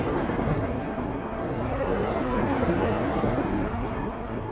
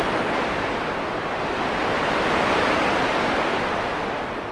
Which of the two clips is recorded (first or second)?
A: second